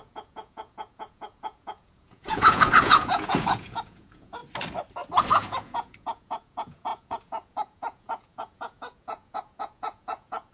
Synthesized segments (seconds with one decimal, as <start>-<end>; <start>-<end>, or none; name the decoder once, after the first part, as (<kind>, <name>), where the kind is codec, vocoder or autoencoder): 0.0-4.4 (vocoder, Vocos); 5.3-10.5